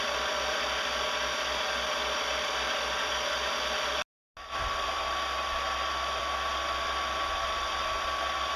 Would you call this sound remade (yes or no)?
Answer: no